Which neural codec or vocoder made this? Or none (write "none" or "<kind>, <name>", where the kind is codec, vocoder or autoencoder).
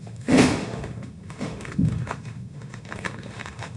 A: autoencoder, DAC-VAE